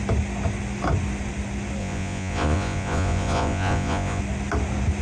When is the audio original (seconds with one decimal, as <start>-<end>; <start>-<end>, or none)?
0.0-1.8; 4.2-5.0